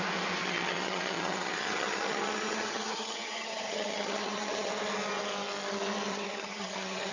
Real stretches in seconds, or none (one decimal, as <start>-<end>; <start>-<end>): 0.0-0.4; 4.7-6.1